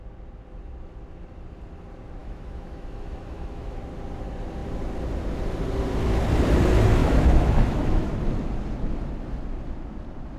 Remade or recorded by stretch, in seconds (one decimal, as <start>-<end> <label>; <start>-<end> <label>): 0.0-2.2 recorded; 2.2-3.8 remade; 3.8-7.0 recorded; 7.0-8.1 remade; 8.1-10.4 recorded